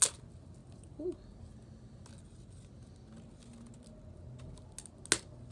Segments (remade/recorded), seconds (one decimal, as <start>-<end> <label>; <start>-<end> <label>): 0.0-5.5 recorded